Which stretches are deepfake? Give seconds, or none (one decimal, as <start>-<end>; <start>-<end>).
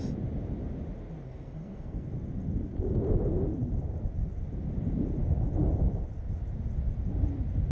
1.2-2.1